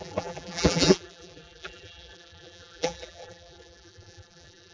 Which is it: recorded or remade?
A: remade